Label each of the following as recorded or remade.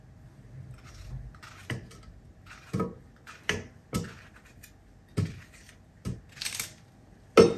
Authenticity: recorded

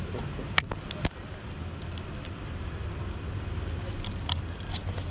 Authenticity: recorded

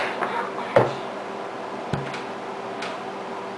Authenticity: recorded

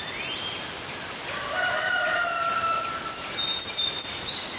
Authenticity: recorded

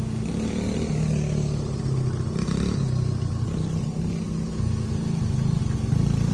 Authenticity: recorded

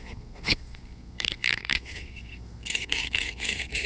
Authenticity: remade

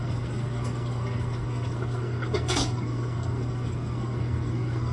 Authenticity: remade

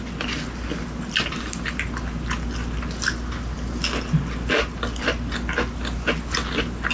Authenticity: recorded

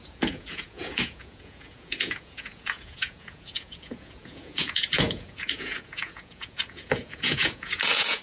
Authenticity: remade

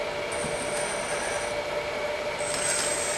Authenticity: recorded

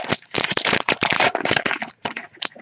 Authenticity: remade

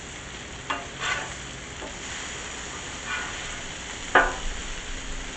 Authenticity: recorded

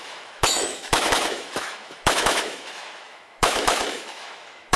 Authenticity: remade